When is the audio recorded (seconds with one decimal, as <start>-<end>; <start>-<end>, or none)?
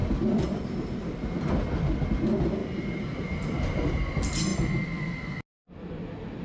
0.7-2.6; 3.6-6.4